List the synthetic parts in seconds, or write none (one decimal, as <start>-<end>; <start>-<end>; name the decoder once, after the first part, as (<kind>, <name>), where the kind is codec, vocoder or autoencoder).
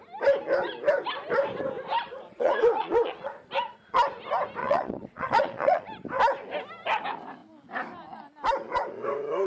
2.3-3.4 (vocoder, Vocos); 4.6-5.8